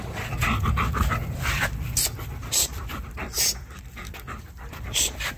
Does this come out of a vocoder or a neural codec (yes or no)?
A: yes